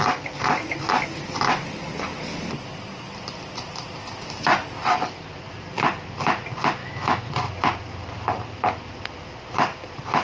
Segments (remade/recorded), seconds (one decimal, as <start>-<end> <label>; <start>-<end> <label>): 0.0-6.8 recorded; 6.8-7.3 remade; 7.3-10.2 recorded